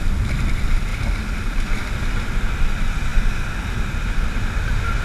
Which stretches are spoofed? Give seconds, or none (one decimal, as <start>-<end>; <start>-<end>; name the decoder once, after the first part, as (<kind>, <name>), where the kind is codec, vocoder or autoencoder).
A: none